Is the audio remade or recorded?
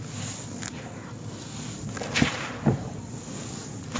recorded